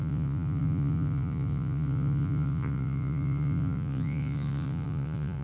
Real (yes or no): no